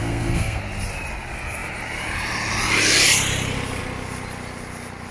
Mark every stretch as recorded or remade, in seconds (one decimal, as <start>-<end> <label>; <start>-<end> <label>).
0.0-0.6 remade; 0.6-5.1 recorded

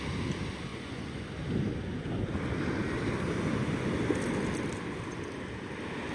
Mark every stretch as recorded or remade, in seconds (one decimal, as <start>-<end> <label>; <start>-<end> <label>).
0.0-0.7 recorded; 0.7-1.3 remade; 1.3-6.1 recorded

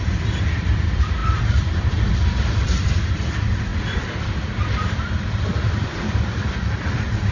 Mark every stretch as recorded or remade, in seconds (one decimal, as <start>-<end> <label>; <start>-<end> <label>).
0.0-3.7 remade; 3.7-5.7 recorded; 5.7-7.3 remade

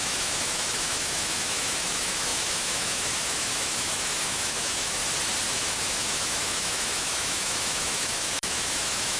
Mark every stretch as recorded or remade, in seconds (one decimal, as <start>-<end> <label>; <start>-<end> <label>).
0.0-5.0 remade; 5.0-5.5 recorded; 5.5-9.2 remade

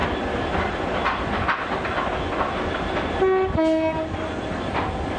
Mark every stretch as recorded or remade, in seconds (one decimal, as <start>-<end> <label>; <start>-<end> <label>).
0.0-5.2 recorded